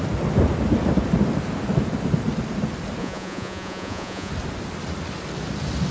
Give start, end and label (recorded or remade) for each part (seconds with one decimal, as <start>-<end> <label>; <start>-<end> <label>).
0.0-3.0 recorded; 3.0-4.3 remade; 4.3-5.9 recorded